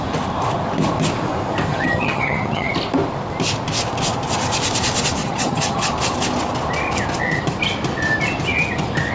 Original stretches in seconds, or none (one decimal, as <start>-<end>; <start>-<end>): 0.0-1.7; 2.7-5.2; 5.9-9.1